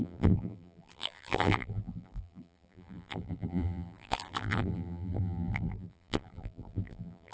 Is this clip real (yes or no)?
no